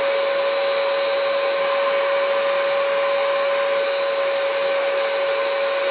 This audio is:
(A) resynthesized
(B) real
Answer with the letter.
B